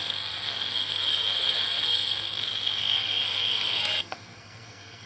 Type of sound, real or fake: fake